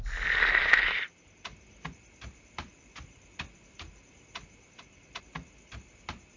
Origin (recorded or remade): recorded